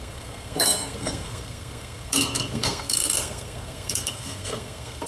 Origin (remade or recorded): remade